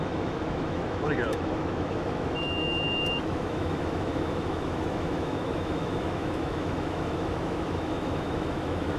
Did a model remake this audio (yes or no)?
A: yes